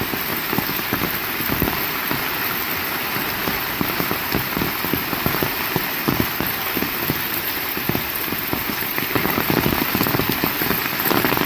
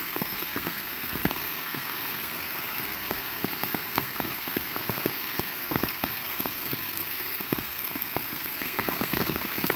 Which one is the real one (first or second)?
first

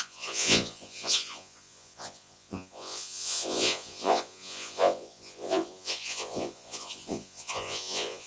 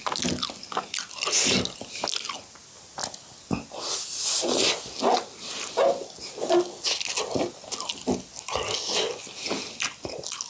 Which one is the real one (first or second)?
second